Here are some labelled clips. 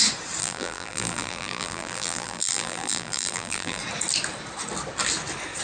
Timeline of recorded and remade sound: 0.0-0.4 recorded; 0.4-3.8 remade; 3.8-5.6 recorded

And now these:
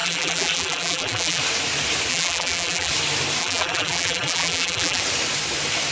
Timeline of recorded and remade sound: 0.0-1.4 remade; 1.4-2.1 recorded; 2.1-2.9 remade; 2.9-3.4 recorded; 3.4-5.0 remade; 5.0-5.9 recorded

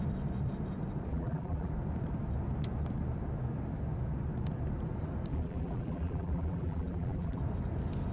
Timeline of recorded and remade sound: 0.0-1.1 recorded; 1.1-1.7 remade; 1.7-5.3 recorded; 5.3-7.4 remade; 7.4-8.1 recorded